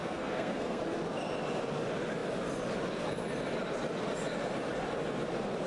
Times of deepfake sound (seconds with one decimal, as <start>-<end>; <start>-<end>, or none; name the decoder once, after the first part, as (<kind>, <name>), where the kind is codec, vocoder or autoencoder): 0.0-0.8 (codec, SNAC)